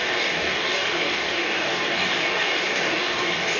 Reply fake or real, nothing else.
fake